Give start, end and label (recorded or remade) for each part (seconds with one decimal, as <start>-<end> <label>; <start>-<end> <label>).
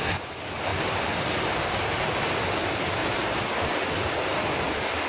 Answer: 0.0-5.1 recorded